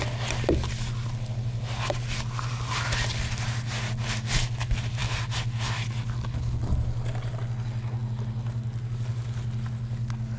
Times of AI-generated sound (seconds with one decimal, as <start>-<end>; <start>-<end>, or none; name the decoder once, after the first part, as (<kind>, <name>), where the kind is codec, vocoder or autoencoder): none

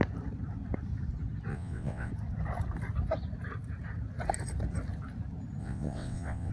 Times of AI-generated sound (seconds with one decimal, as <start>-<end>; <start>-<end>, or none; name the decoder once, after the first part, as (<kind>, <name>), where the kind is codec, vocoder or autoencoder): 1.5-2.1 (vocoder, WaveNeXt); 5.6-6.5

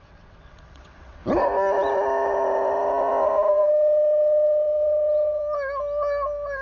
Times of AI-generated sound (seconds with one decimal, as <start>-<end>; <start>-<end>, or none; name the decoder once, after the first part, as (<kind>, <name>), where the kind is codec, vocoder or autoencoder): 0.0-1.2 (vocoder, WaveNeXt); 3.5-5.4

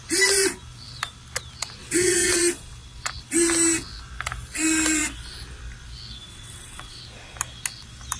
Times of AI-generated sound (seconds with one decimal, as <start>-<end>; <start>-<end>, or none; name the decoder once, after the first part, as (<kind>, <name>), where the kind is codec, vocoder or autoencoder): 1.8-2.4 (vocoder, WaveNeXt); 6.3-7.0